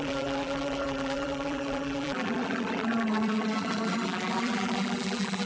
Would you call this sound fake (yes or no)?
yes